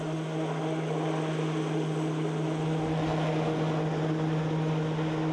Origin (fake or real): real